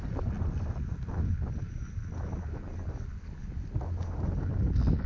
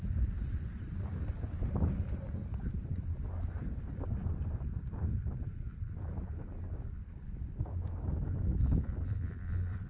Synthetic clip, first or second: second